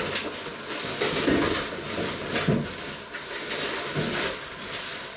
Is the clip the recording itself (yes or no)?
yes